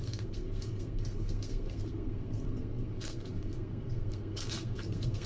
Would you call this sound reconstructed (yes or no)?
yes